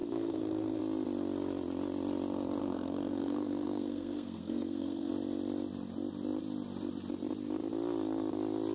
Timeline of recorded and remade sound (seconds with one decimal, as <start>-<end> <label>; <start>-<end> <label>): 0.0-0.8 remade; 0.8-2.6 recorded; 2.6-5.1 remade; 5.1-8.7 recorded